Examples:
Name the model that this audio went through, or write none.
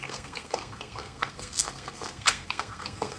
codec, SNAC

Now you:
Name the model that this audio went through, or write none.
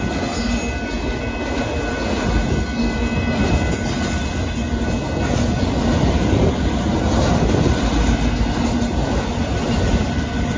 none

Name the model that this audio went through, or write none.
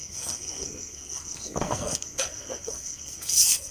codec, SNAC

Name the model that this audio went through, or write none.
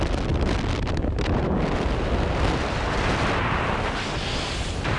none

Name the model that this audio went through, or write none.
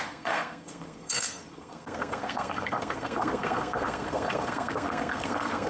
codec, SNAC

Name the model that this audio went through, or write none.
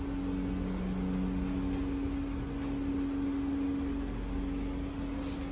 none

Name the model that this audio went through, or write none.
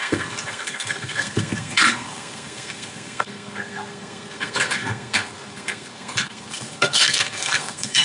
codec, SNAC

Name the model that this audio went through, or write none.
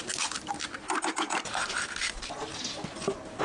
none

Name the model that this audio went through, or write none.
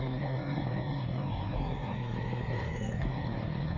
codec, SNAC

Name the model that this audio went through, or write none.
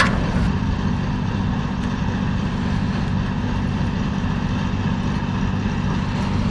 none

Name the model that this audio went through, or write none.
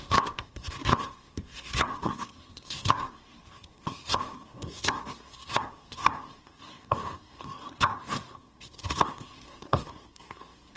codec, SNAC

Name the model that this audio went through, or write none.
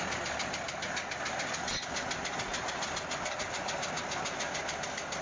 none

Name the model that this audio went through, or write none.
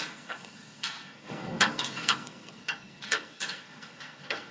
codec, SNAC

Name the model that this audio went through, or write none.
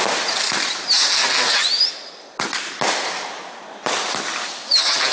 none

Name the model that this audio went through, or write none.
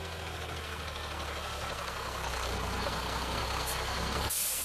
codec, SNAC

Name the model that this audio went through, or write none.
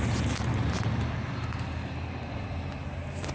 none